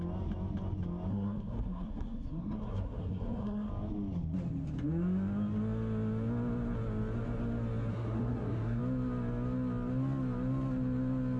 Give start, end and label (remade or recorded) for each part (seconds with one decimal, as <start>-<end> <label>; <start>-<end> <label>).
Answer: 0.0-1.1 recorded; 1.1-3.7 remade; 3.7-7.9 recorded; 7.9-8.8 remade; 8.8-11.4 recorded